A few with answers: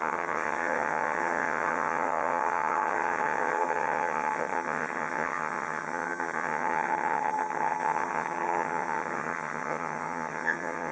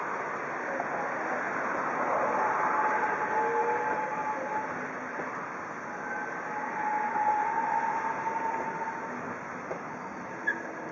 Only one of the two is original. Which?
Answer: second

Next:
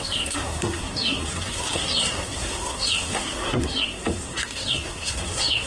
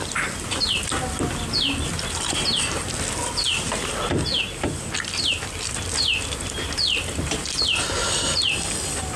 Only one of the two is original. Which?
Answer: second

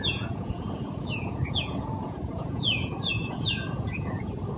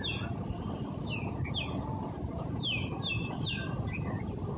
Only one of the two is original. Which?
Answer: second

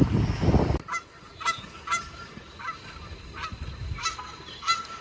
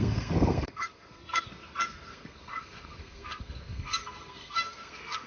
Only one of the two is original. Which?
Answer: first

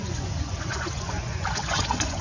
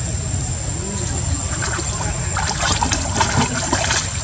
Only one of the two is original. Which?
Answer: second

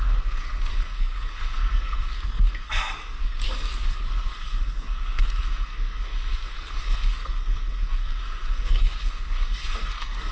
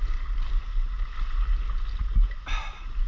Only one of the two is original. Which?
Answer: second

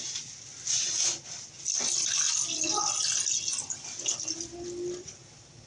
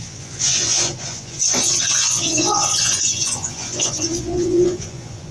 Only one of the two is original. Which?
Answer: first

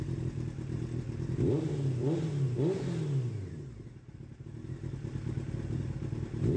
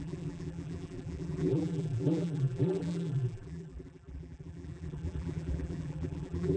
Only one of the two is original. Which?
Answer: first